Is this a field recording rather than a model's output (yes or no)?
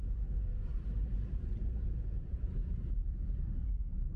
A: no